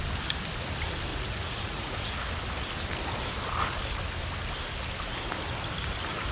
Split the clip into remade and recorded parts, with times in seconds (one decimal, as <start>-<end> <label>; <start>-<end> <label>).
0.0-1.1 recorded; 1.1-2.1 remade; 2.1-6.3 recorded